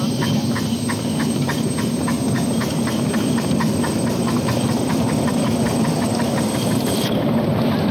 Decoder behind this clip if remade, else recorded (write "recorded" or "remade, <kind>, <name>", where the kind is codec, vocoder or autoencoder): recorded